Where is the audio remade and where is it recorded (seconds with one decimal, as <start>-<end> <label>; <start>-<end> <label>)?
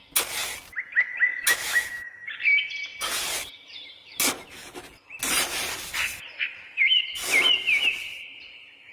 0.0-1.3 recorded; 1.3-2.4 remade; 2.4-8.9 recorded